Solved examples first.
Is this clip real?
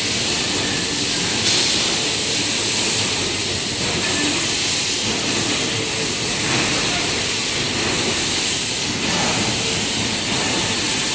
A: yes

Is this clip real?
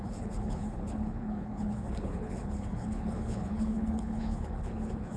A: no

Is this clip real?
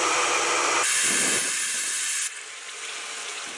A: yes